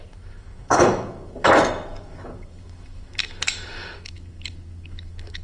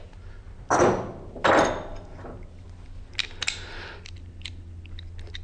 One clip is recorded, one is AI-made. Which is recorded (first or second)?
second